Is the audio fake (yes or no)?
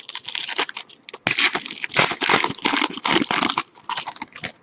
no